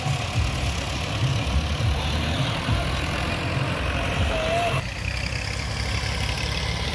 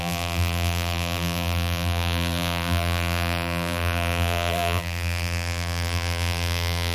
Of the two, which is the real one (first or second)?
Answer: first